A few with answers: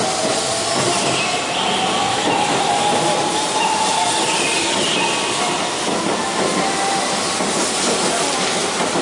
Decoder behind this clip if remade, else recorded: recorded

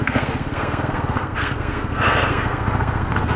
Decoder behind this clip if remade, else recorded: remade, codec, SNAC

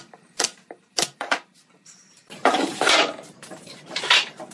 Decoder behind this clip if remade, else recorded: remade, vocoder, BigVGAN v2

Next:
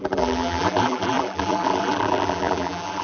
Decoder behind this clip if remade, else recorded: remade, vocoder, BigVGAN v2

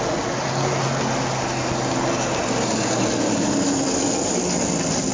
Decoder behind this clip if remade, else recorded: recorded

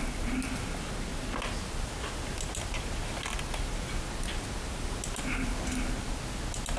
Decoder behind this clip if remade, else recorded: recorded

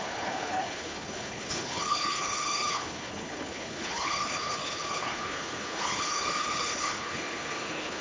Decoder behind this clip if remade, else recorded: remade, codec, HILCodec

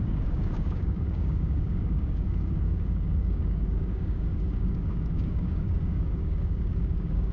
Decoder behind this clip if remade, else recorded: remade, codec, DAC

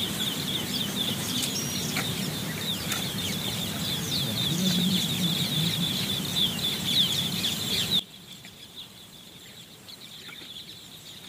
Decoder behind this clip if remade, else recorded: remade, vocoder, BigVGAN v2